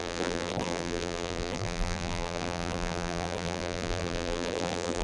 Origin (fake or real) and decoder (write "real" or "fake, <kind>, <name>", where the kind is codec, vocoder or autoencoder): fake, vocoder, BigVGAN v2